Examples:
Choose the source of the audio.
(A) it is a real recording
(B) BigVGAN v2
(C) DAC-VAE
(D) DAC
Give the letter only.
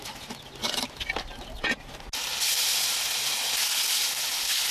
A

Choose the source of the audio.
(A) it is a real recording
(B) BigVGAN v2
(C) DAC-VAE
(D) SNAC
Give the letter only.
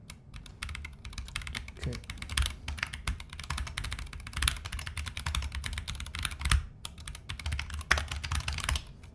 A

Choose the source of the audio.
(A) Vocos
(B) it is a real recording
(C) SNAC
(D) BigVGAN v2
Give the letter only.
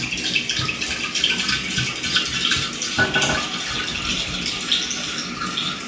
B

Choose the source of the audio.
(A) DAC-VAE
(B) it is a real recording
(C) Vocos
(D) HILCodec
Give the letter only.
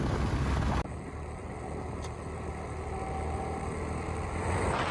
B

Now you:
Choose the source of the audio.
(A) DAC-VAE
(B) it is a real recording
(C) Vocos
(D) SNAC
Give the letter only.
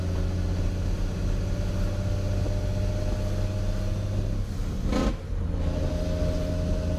B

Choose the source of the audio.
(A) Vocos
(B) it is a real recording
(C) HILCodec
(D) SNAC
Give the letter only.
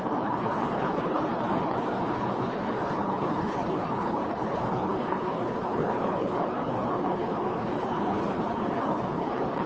C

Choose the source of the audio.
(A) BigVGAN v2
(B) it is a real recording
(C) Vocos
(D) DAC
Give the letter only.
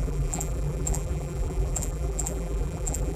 A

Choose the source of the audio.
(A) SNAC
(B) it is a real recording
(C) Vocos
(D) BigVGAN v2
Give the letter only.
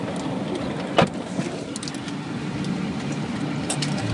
B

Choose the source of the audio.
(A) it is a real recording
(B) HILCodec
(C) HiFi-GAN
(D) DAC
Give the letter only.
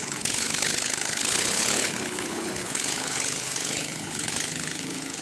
B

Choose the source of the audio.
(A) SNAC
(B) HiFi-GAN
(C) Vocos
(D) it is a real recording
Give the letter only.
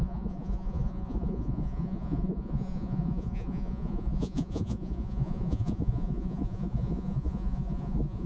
C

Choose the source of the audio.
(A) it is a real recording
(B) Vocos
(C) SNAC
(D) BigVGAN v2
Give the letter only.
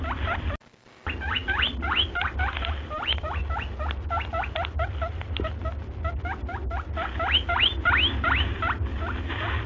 A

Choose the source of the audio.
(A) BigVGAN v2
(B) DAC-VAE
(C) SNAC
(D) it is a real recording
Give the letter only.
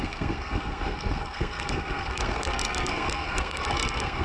C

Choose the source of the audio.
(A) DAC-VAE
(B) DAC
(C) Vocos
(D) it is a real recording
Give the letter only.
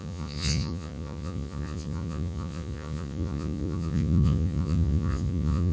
C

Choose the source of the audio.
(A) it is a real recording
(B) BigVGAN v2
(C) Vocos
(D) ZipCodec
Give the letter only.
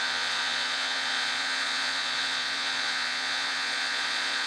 C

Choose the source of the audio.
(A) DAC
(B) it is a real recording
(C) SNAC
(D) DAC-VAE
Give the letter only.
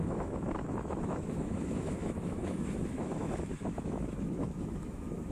D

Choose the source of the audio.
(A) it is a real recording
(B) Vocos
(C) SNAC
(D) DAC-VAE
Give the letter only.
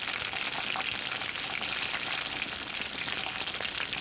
A